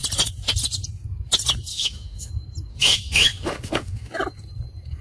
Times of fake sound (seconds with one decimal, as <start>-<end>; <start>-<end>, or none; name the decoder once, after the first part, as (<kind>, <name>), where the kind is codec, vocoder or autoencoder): 1.7-2.3 (autoencoder, DAC-VAE); 2.7-4.1